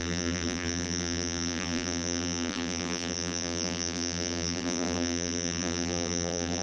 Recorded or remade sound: remade